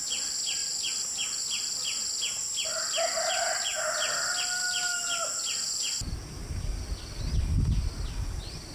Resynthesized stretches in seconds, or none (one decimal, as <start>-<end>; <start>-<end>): none